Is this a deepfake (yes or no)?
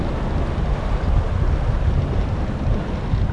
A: no